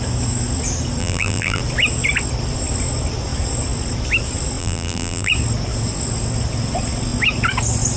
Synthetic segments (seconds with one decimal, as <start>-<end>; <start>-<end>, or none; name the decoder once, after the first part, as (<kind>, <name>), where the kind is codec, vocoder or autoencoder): 1.0-1.6 (vocoder, BigVGAN v2); 4.6-5.3